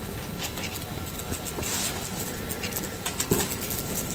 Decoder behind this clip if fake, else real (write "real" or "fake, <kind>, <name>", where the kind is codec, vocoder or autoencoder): real